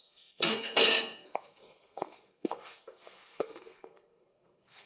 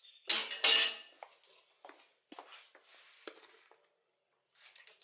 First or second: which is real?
second